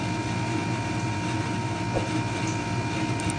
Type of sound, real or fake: real